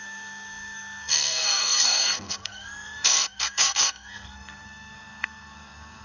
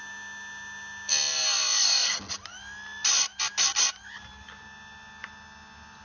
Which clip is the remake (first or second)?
first